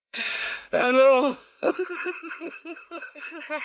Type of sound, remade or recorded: remade